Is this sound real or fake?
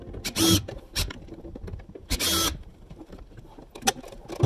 real